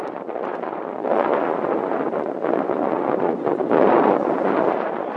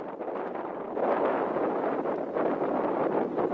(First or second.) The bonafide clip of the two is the second